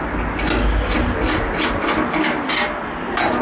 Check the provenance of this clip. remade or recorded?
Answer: recorded